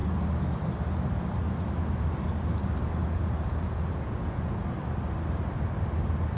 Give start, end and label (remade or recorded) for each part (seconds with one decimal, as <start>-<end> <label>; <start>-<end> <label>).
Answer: 0.0-3.0 recorded; 3.0-4.6 remade; 4.6-6.4 recorded